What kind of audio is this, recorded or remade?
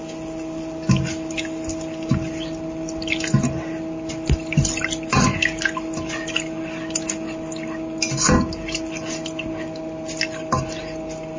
recorded